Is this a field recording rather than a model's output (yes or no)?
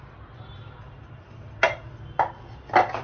yes